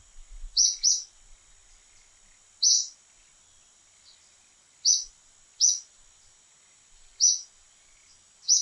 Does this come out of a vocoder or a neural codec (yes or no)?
no